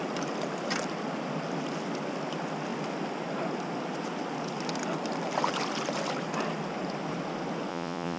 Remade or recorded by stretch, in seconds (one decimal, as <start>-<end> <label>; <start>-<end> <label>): 0.0-7.7 recorded; 7.7-8.2 remade